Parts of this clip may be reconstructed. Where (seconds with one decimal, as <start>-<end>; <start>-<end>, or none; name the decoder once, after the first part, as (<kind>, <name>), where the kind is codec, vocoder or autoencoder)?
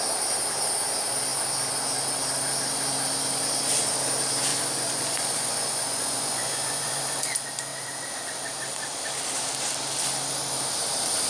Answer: 4.5-7.0 (vocoder, Vocos)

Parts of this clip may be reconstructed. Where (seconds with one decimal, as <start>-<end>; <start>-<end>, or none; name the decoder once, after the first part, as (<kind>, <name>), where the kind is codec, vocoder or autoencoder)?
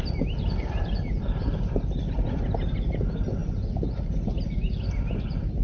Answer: none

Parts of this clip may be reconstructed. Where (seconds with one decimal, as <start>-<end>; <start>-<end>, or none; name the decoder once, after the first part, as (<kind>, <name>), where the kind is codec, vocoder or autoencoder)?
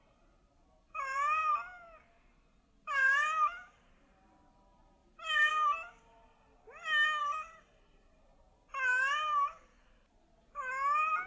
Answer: 0.0-1.4 (vocoder, BigVGAN v2); 2.8-6.5; 7.2-8.3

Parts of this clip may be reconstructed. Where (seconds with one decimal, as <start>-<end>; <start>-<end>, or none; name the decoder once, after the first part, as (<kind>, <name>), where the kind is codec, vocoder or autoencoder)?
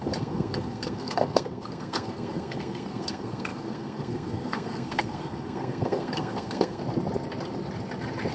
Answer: 0.0-6.8 (codec, SNAC)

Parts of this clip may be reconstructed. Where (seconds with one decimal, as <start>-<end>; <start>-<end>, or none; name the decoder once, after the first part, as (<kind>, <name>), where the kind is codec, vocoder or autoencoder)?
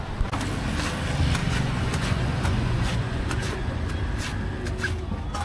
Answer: 1.4-3.9 (vocoder, Vocos)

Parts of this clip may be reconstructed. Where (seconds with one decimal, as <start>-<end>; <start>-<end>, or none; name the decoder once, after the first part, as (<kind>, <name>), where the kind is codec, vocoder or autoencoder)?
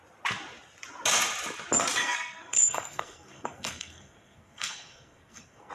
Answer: 2.0-5.7 (codec, SNAC)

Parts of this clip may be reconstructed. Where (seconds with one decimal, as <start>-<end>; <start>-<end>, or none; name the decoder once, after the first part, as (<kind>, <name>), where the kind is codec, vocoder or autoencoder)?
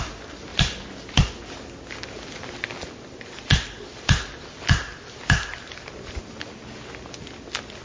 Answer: none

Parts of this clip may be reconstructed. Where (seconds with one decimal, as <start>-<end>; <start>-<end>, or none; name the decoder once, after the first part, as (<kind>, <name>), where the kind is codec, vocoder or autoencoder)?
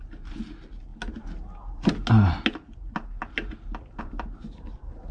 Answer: none